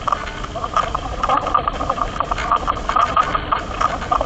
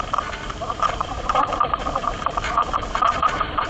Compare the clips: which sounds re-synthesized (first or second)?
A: second